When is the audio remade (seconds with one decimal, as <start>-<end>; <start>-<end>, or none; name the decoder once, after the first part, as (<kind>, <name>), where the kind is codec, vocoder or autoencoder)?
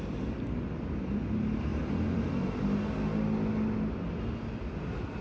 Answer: none